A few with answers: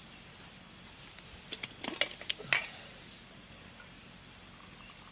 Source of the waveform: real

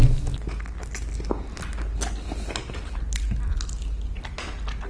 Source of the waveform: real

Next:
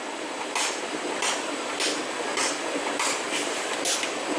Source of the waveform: real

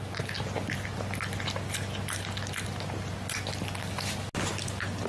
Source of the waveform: real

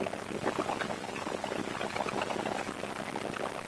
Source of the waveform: real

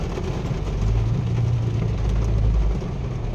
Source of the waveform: real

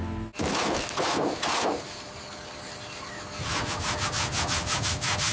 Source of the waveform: real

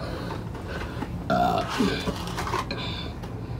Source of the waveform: real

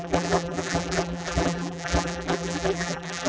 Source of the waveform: fake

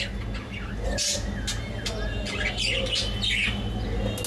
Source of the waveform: real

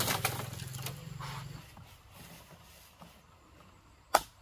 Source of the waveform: real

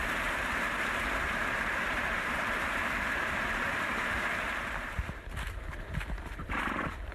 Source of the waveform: fake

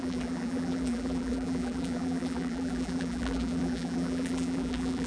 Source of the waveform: fake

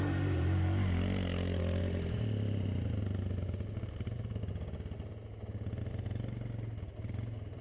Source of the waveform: real